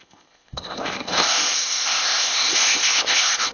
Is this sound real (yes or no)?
no